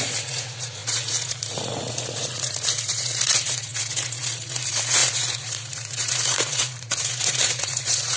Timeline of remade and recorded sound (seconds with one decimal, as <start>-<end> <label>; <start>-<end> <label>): 0.0-8.2 remade